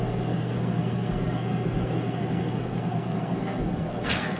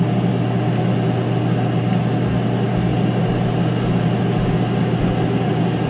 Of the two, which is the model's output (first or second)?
first